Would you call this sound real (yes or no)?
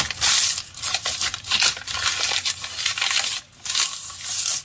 yes